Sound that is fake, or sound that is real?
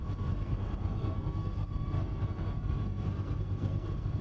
fake